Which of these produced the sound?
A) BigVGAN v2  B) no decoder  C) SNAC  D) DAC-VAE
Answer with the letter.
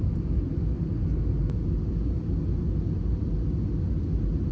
B